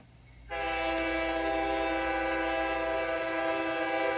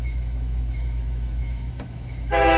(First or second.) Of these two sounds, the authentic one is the first